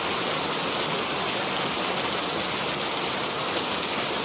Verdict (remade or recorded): recorded